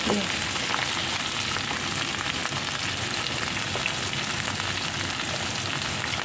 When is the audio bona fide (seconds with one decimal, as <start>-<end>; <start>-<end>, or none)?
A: 0.0-6.2